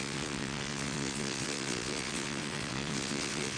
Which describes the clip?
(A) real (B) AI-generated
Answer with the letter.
B